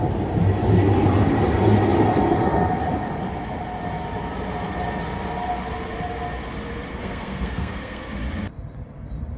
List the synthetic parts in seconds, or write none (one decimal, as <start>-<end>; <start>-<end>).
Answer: 6.9-8.0